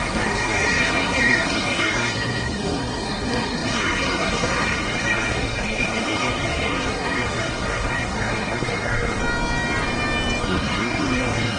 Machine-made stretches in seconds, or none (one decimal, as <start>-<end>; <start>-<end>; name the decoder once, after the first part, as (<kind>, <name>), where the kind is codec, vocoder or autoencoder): 0.0-9.2 (codec, SNAC); 10.4-11.6